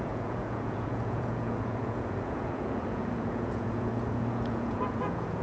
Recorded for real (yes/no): no